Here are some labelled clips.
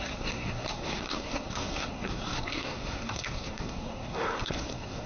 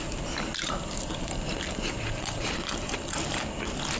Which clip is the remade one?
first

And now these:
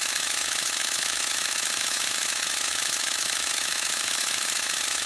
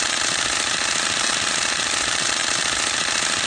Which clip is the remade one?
first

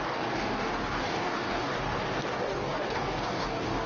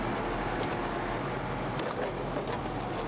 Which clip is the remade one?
first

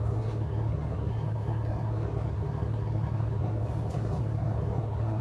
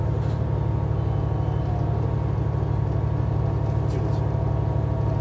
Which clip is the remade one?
first